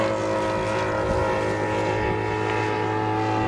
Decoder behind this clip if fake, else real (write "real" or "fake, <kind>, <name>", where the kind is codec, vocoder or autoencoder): real